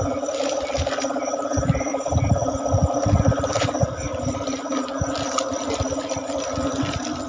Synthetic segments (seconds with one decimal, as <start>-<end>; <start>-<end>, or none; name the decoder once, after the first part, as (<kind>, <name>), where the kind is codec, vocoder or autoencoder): 0.0-4.1 (vocoder, BigVGAN v2); 6.8-7.3